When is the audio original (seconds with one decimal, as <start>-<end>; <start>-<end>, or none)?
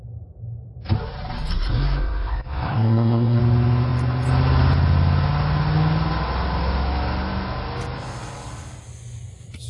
0.0-1.5; 3.4-9.7